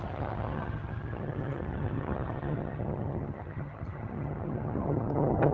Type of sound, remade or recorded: remade